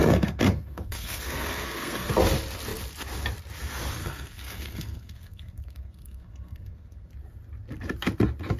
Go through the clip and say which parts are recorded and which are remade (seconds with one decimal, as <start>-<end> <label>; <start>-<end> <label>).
0.0-2.1 remade; 2.1-4.0 recorded; 4.0-7.1 remade; 7.1-8.6 recorded